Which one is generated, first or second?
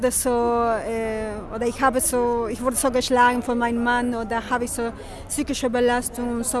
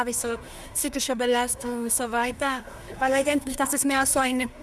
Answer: second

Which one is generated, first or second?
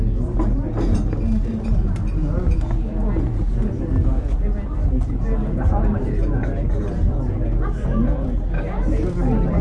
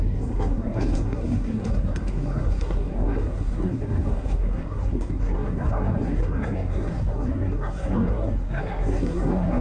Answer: second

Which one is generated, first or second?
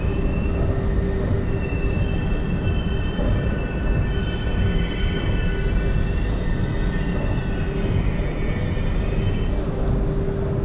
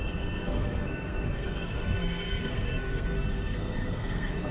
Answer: second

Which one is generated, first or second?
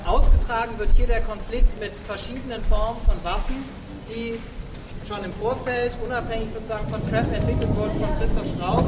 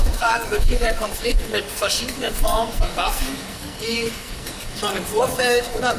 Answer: second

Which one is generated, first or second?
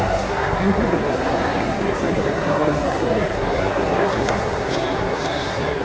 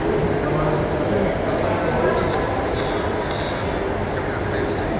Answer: first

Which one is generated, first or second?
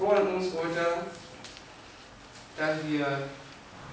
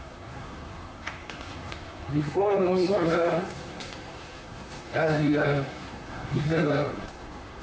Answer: second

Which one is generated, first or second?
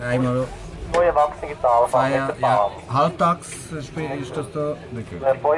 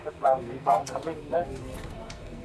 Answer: second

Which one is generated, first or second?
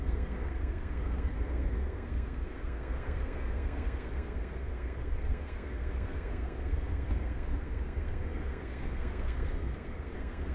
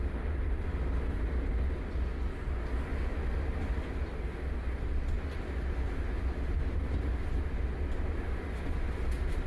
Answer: first